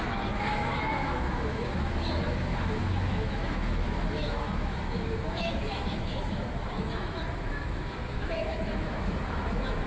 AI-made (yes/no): yes